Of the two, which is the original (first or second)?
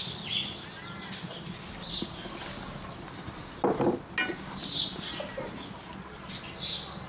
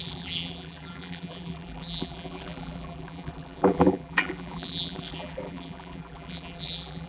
first